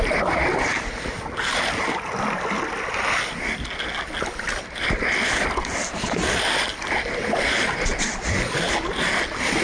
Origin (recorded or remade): recorded